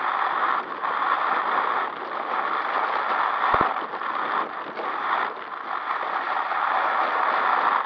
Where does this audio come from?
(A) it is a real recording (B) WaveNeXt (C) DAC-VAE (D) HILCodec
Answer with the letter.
A